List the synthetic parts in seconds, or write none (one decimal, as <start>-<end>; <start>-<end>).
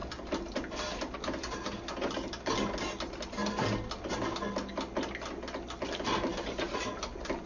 none